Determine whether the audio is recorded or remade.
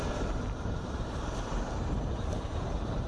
remade